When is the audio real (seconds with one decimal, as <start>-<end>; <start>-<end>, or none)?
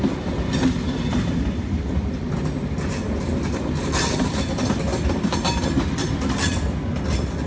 0.0-7.5